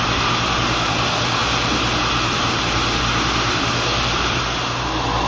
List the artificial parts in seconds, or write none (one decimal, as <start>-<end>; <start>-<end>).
1.4-2.9; 3.9-4.4

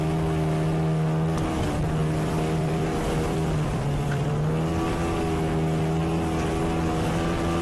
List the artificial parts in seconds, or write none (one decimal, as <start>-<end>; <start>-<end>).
2.0-4.3

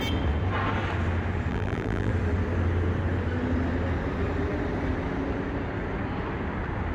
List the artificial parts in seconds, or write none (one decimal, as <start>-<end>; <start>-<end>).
1.5-2.1

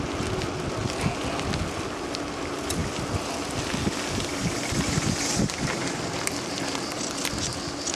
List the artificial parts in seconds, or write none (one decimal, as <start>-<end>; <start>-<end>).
none

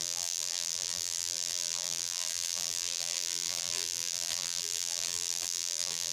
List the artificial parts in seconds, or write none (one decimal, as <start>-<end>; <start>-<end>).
0.0-6.1

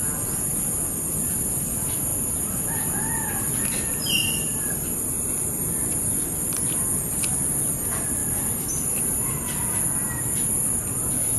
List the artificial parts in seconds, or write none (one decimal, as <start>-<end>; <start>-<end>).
2.1-7.1; 8.2-9.8

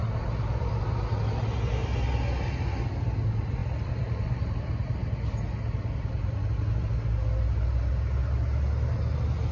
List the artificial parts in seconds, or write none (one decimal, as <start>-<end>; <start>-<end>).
none